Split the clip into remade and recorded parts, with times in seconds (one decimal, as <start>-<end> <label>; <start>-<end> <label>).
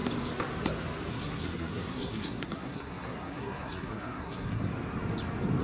0.0-1.1 recorded; 1.1-4.7 remade; 4.7-5.6 recorded